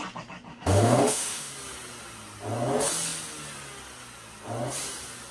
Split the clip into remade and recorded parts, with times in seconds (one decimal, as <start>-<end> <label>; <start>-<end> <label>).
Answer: 0.0-0.5 recorded; 0.5-1.5 remade; 1.5-5.3 recorded